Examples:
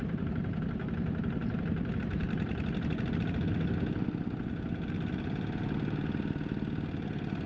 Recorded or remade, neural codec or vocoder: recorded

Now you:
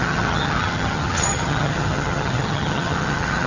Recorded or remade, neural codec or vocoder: remade, vocoder, HiFi-GAN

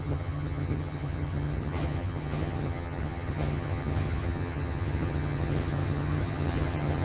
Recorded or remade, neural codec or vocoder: remade, vocoder, HiFi-GAN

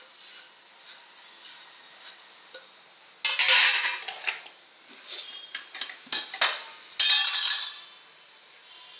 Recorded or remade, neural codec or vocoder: recorded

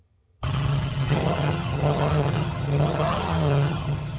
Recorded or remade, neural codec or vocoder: remade, vocoder, HiFi-GAN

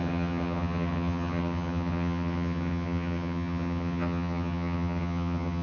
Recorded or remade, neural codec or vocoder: remade, vocoder, HiFi-GAN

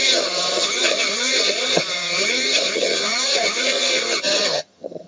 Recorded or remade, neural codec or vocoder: remade, vocoder, HiFi-GAN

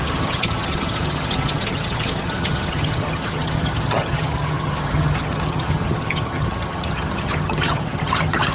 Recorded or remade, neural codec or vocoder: remade, vocoder, HiFi-GAN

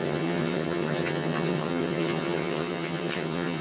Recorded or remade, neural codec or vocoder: remade, vocoder, HiFi-GAN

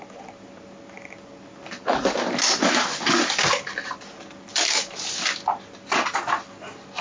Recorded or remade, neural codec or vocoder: recorded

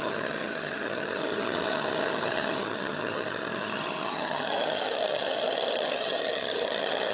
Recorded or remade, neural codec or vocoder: remade, vocoder, HiFi-GAN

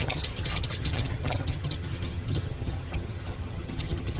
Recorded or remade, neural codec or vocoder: remade, vocoder, HiFi-GAN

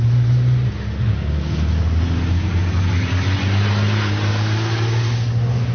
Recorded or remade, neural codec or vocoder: recorded